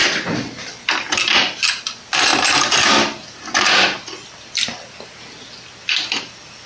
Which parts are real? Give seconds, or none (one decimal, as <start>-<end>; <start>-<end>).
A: 0.0-6.7